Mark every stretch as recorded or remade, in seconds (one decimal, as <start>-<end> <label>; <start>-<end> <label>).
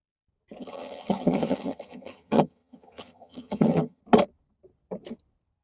0.0-0.6 recorded; 0.6-4.0 remade; 4.0-5.6 recorded